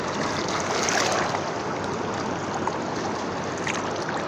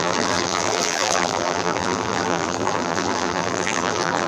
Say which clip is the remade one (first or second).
second